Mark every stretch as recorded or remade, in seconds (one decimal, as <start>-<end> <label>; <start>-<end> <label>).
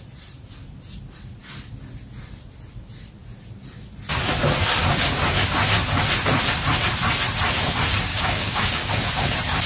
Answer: 0.0-8.1 recorded; 8.1-8.9 remade; 8.9-9.7 recorded